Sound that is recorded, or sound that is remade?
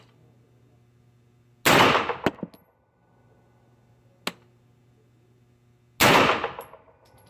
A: recorded